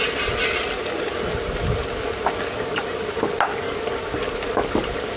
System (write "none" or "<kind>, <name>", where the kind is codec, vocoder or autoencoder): none